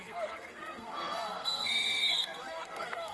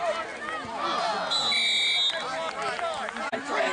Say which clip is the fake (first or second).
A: first